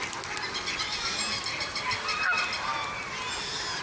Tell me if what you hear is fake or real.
real